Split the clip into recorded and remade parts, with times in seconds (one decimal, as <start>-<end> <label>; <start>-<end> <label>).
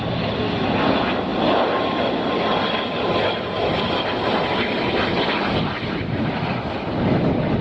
0.0-7.6 recorded